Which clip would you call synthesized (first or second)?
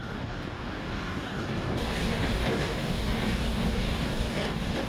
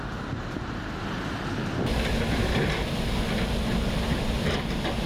first